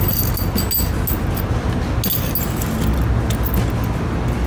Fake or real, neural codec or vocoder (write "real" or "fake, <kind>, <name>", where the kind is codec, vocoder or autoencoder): real